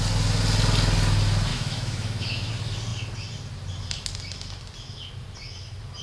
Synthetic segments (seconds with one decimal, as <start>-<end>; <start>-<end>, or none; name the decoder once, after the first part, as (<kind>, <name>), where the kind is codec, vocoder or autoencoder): 1.5-2.5 (autoencoder, DAC-VAE)